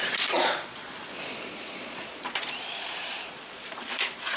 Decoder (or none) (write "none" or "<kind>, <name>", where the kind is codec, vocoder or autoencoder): vocoder, Vocos